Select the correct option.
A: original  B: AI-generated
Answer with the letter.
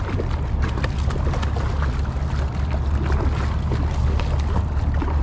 A